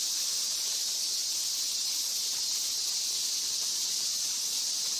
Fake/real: real